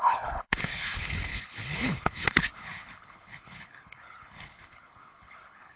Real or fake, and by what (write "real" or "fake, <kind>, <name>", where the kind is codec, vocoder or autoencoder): fake, codec, HILCodec